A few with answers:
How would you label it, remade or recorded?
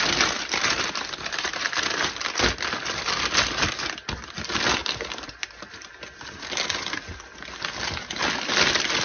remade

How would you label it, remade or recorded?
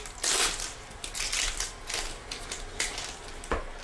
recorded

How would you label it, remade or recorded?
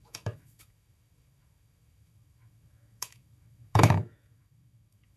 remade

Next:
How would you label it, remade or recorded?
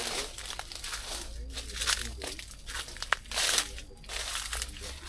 recorded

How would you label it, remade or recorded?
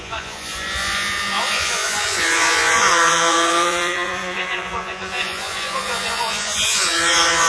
remade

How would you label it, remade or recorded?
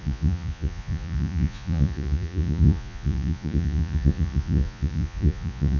remade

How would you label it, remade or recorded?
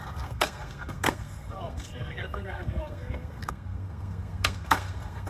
remade